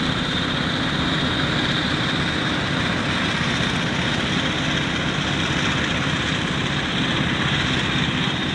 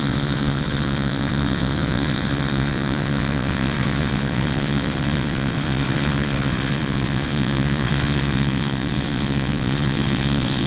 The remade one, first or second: second